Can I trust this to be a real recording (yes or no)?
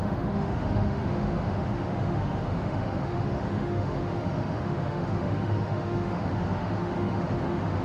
no